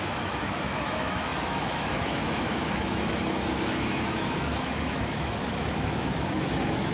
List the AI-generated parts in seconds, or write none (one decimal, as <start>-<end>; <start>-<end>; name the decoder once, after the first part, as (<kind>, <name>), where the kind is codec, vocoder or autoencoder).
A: 0.0-6.9 (autoencoder, DAC-VAE)